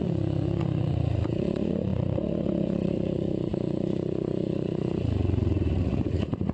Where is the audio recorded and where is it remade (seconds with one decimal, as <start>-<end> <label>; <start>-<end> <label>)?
0.0-6.5 remade

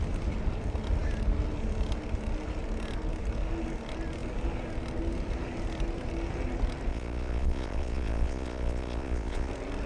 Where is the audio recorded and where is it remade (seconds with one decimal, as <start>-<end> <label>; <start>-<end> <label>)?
0.0-6.9 recorded; 6.9-9.5 remade; 9.5-9.9 recorded